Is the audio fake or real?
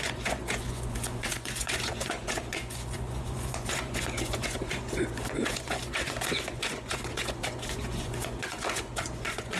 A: fake